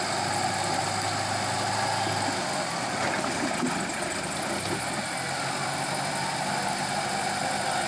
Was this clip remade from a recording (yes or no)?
no